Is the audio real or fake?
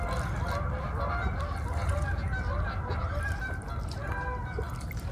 real